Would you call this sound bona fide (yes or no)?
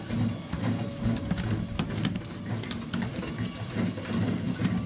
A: yes